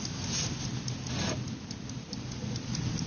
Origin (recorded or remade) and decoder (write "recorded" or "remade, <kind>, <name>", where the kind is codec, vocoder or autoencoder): recorded